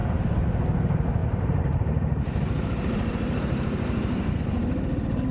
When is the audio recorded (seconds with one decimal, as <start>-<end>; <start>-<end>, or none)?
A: 0.5-1.2; 4.4-5.3